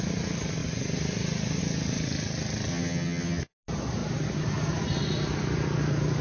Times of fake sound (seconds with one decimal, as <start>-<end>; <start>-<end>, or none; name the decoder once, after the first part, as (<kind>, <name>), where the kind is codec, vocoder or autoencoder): 2.7-3.4 (vocoder, HiFi-GAN)